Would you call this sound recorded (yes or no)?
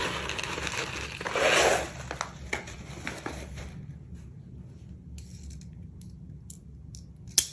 yes